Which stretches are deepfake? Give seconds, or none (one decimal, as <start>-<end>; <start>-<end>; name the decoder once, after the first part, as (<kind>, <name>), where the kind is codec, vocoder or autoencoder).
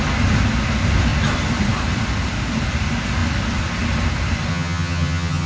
4.5-5.5 (vocoder, HiFi-GAN)